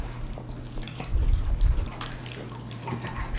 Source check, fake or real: fake